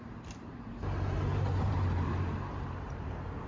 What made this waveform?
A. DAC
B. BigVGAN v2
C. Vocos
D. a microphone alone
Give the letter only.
B